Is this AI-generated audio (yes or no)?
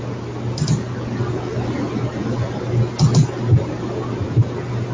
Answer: no